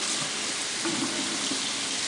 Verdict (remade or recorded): remade